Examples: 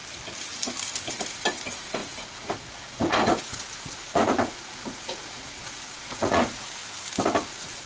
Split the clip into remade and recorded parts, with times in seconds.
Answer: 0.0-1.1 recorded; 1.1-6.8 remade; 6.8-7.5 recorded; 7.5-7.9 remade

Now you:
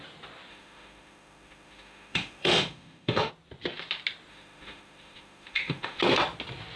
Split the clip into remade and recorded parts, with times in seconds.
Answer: 0.0-0.5 recorded; 0.5-3.3 remade; 3.3-4.3 recorded; 4.3-6.0 remade; 6.0-6.8 recorded

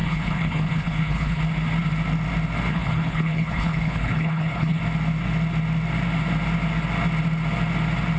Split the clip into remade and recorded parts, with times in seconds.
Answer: 0.0-1.4 remade; 1.4-2.7 recorded; 2.7-4.8 remade; 4.8-8.2 recorded

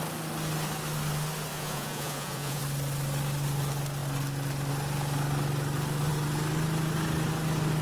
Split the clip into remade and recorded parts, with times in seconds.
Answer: 0.0-1.5 recorded; 1.5-2.6 remade; 2.6-7.8 recorded

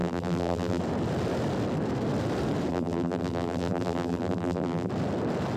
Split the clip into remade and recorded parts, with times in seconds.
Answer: 0.0-0.8 remade; 0.8-2.7 recorded; 2.7-4.9 remade; 4.9-5.6 recorded

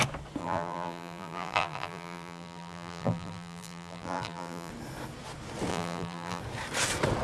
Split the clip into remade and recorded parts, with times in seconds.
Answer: 0.0-0.4 recorded; 0.4-4.7 remade; 4.7-5.7 recorded; 5.7-6.4 remade; 6.4-7.2 recorded

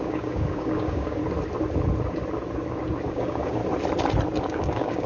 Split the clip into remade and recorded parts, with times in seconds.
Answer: 0.0-1.2 remade; 1.2-3.1 recorded; 3.1-3.6 remade; 3.6-4.4 recorded; 4.4-5.1 remade

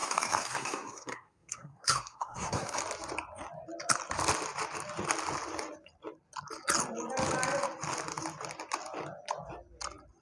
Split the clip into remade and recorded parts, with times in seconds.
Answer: 0.0-2.8 remade; 2.8-10.2 recorded